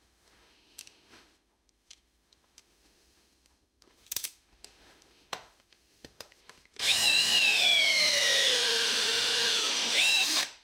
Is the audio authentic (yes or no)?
no